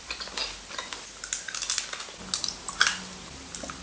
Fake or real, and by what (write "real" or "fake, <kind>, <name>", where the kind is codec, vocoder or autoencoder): real